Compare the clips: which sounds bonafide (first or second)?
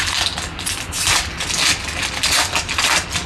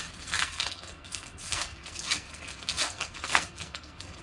first